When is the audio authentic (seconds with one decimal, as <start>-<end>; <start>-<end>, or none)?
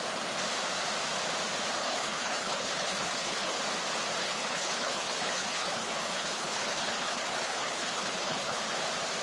0.0-1.8; 3.6-4.2; 8.6-9.2